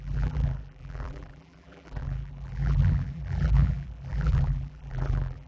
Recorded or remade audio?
remade